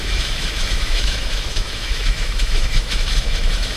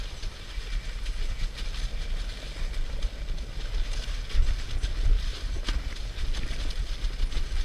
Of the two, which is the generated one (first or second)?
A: first